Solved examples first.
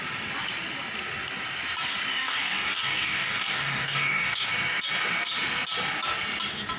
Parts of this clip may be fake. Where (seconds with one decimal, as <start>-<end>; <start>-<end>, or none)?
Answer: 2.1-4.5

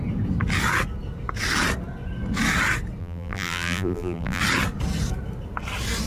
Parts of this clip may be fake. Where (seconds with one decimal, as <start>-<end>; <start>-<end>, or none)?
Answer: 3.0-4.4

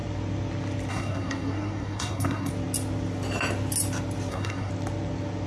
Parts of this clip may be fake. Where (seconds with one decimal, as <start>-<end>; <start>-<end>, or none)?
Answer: 0.9-2.5; 4.3-4.7

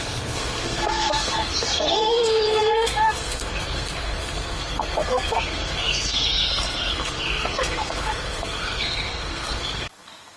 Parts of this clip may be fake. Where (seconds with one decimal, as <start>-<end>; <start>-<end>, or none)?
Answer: 0.0-10.4